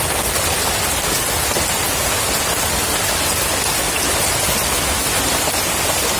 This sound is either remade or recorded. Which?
recorded